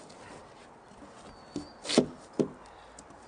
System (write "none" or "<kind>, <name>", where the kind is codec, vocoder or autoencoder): none